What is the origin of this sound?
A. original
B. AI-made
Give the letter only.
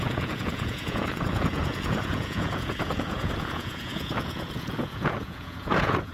B